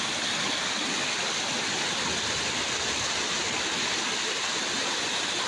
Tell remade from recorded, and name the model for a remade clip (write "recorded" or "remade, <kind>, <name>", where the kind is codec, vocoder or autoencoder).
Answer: recorded